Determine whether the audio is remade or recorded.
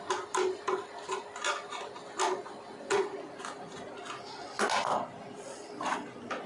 recorded